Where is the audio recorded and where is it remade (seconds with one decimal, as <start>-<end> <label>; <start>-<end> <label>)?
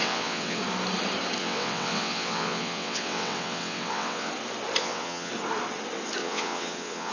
0.0-0.6 remade; 0.6-1.4 recorded; 1.4-4.3 remade; 4.3-4.8 recorded; 4.8-5.3 remade; 5.3-6.2 recorded; 6.2-7.1 remade